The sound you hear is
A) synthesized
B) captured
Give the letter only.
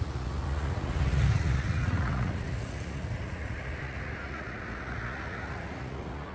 A